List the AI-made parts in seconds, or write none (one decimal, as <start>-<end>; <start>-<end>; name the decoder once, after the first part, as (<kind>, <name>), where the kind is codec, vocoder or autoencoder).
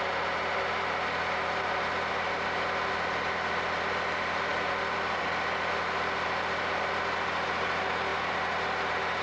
none